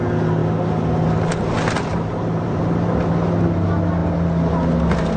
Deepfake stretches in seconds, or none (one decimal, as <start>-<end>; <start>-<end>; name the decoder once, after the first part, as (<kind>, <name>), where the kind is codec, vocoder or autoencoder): 1.9-2.6 (vocoder, BigVGAN v2)